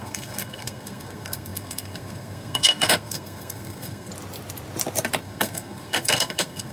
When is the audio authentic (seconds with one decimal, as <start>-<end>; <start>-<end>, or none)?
4.1-5.2